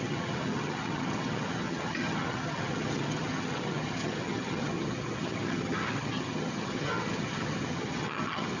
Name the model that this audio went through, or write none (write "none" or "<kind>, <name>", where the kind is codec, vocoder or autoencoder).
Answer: vocoder, HiFi-GAN